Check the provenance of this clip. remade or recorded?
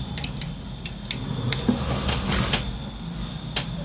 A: recorded